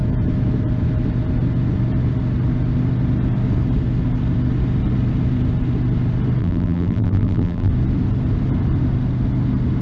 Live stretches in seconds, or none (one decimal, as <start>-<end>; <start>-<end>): 0.0-6.4; 7.7-9.8

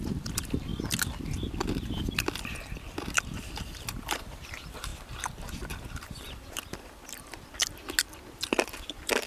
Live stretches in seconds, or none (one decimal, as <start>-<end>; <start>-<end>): 0.7-2.0; 7.6-8.3

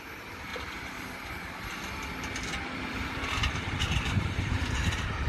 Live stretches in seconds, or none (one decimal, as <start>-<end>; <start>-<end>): 0.5-3.5

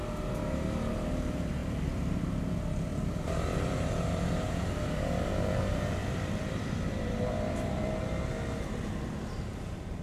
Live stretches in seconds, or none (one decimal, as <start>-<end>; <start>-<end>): 0.0-1.6; 2.2-2.9; 8.0-10.0

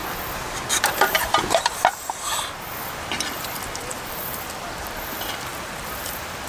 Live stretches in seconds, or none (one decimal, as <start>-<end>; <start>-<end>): 0.0-3.9

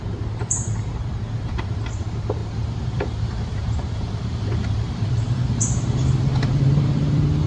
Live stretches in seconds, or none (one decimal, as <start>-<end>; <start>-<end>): none

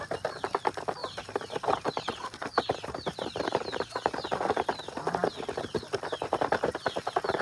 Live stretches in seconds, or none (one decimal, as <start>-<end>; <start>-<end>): 0.0-1.0; 3.8-7.4

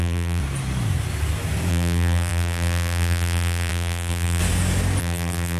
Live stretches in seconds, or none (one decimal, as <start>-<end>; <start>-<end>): 0.4-1.7; 4.4-5.0